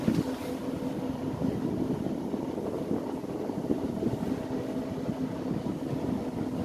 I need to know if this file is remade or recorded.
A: recorded